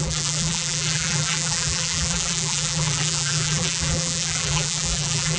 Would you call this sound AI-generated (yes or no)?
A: yes